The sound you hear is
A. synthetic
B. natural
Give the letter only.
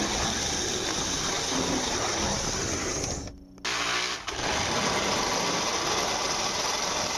B